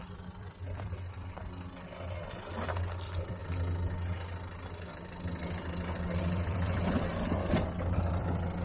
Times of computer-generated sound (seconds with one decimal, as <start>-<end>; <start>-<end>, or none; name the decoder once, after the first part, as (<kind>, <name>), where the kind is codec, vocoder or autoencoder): 0.0-1.4 (vocoder, BigVGAN v2); 2.7-3.4; 6.2-8.6